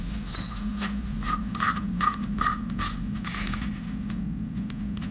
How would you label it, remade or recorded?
recorded